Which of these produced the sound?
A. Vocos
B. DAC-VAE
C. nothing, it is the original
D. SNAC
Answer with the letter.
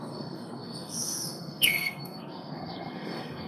D